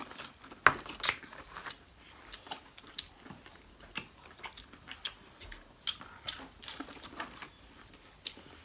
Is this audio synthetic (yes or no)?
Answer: no